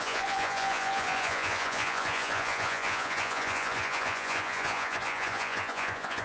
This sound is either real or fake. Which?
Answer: fake